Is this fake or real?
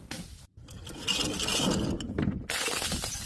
real